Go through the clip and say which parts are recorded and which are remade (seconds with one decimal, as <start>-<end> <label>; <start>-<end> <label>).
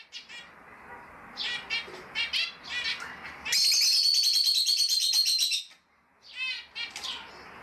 0.0-4.1 recorded; 4.1-5.6 remade; 5.6-7.6 recorded